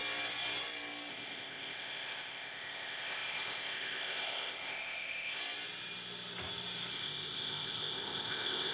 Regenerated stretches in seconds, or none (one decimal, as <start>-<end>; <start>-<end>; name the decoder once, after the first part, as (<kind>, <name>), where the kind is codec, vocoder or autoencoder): 1.1-5.4 (codec, ZipCodec); 6.9-8.7